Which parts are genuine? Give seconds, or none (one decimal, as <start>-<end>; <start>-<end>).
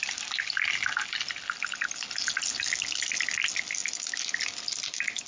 0.0-5.3